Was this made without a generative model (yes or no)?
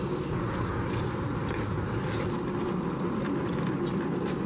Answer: yes